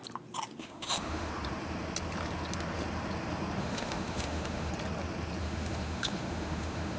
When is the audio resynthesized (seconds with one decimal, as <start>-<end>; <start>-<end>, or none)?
0.6-1.3; 3.6-4.7; 5.4-7.0